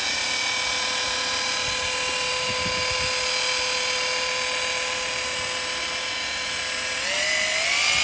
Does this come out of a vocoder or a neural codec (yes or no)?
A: no